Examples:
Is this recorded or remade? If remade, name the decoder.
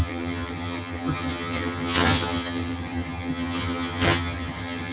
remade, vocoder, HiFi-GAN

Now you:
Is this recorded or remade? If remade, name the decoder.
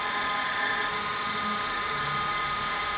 remade, autoencoder, DAC-VAE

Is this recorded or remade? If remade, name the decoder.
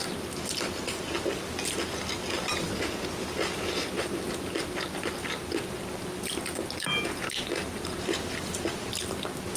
recorded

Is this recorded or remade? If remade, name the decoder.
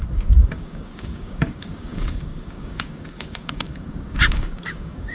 remade, codec, DAC